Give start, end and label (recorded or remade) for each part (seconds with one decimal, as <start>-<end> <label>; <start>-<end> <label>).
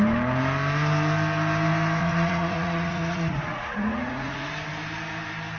0.0-2.0 recorded; 2.0-4.5 remade; 4.5-5.6 recorded